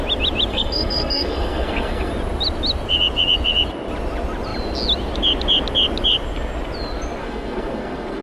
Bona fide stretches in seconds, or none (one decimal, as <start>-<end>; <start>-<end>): 0.0-0.5; 2.1-7.2